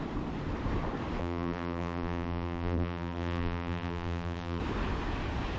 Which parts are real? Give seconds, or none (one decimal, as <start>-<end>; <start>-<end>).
0.0-1.2; 4.6-5.6